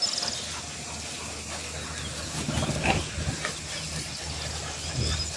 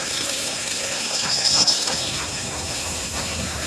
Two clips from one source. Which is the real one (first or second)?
first